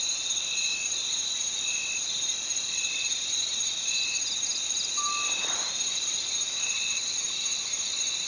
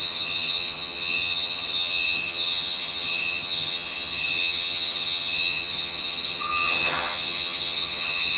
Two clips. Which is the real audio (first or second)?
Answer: first